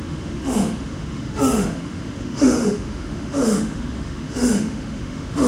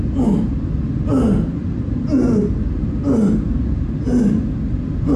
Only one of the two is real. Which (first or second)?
second